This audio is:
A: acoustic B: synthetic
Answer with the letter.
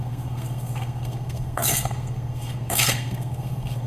B